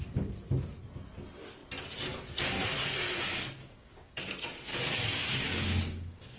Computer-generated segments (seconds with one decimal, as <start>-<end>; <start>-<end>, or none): 3.6-4.2; 4.7-6.4